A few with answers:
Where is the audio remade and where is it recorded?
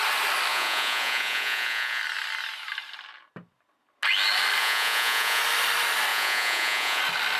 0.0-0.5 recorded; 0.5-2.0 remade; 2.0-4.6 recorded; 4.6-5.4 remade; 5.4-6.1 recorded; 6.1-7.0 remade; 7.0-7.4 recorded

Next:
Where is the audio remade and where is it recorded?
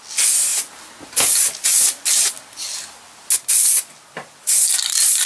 0.0-5.3 recorded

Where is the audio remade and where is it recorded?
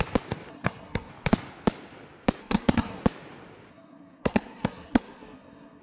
0.0-0.5 recorded; 0.5-1.1 remade; 1.1-2.4 recorded; 2.4-3.0 remade; 3.0-3.7 recorded; 3.7-5.8 remade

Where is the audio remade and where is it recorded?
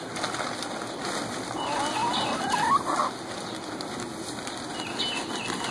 0.0-5.7 recorded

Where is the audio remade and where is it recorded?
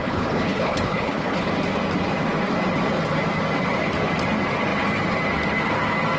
0.0-1.5 remade; 1.5-6.2 recorded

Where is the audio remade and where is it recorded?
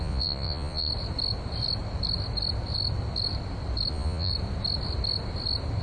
0.0-0.9 remade; 0.9-3.9 recorded; 3.9-4.3 remade; 4.3-5.8 recorded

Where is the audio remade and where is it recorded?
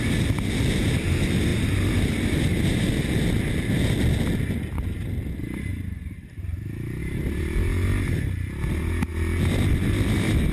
0.0-1.5 recorded; 1.5-2.9 remade; 2.9-5.7 recorded; 5.7-7.0 remade; 7.0-10.5 recorded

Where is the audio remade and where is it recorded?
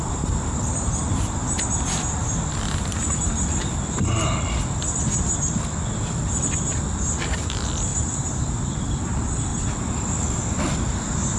0.0-1.4 remade; 1.4-6.6 recorded; 6.6-9.5 remade; 9.5-10.9 recorded; 10.9-11.4 remade